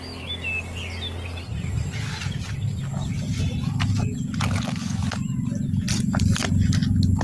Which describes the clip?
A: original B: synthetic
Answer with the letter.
A